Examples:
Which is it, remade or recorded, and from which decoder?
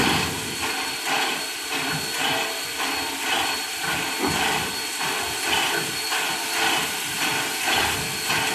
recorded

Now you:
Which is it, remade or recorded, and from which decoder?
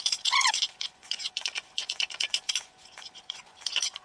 remade, vocoder, Vocos